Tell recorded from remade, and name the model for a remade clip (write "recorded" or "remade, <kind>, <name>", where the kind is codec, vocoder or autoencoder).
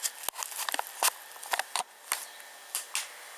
recorded